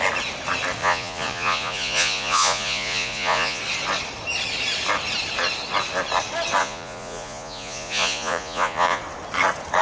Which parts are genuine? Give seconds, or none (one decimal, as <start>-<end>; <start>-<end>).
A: 0.0-0.8; 3.6-6.6; 9.0-9.8